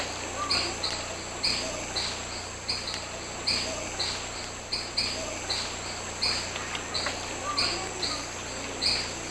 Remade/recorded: recorded